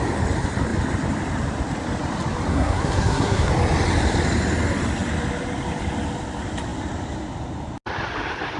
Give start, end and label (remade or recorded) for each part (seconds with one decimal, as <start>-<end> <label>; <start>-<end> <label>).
0.0-2.5 recorded; 2.5-3.5 remade; 3.5-8.6 recorded